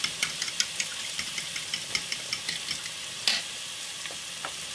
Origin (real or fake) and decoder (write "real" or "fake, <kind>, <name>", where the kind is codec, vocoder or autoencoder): real